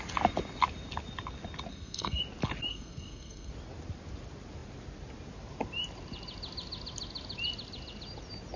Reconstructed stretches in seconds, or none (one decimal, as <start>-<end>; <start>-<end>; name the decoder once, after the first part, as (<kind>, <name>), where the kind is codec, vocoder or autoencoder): 1.7-2.2 (codec, SNAC); 2.7-3.5